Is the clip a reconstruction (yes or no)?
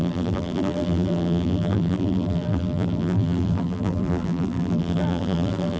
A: yes